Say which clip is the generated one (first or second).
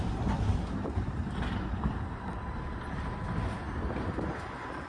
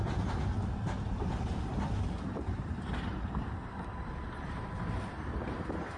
second